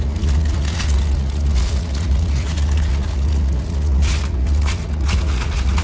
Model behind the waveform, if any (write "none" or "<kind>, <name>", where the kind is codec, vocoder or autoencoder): vocoder, Vocos